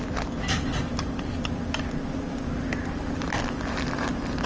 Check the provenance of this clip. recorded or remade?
recorded